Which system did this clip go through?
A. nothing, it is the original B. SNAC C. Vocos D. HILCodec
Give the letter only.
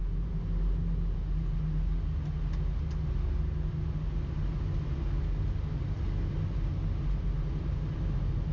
A